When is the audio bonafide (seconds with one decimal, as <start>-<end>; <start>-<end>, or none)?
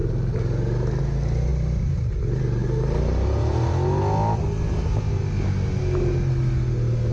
0.0-7.1